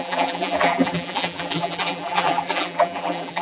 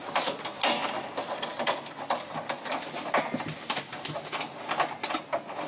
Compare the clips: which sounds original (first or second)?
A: second